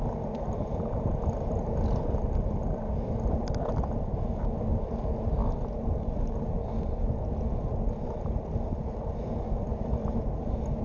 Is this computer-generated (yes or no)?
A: no